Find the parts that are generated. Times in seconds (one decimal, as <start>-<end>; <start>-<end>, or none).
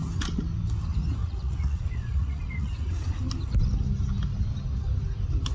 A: 1.2-2.9